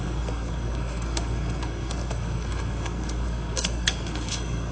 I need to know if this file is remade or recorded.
remade